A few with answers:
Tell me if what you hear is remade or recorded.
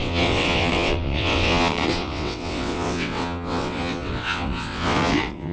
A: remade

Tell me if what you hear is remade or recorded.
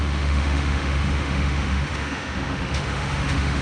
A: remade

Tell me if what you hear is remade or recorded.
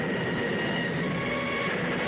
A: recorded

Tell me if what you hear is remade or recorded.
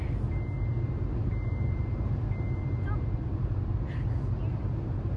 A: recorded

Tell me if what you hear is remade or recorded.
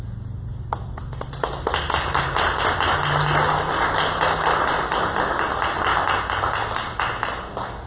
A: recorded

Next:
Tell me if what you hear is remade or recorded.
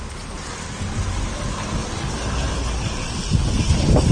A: recorded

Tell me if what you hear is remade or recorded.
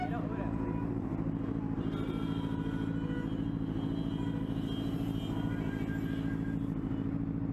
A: recorded